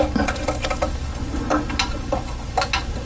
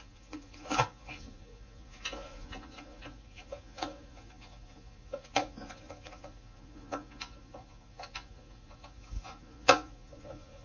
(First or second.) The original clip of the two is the first